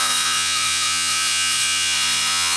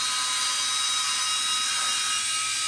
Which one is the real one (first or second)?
second